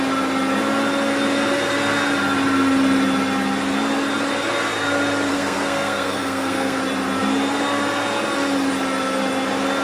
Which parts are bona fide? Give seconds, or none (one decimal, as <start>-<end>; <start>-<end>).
0.0-5.3; 6.8-9.8